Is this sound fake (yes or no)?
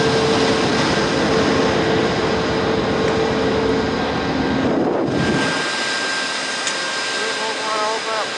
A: no